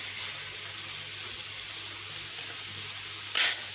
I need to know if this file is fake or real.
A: real